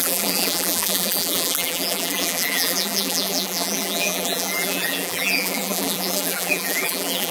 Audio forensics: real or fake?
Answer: fake